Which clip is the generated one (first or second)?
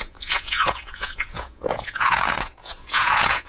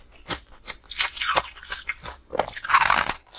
first